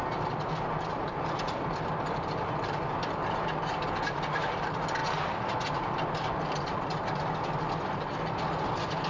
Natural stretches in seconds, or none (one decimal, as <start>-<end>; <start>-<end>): 0.0-1.0; 1.6-5.0; 7.2-9.1